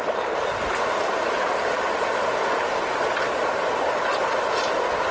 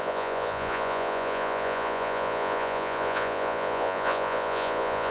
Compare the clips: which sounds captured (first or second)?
first